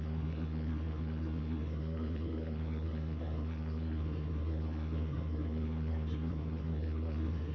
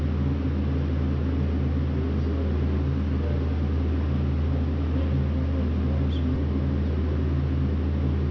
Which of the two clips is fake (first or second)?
first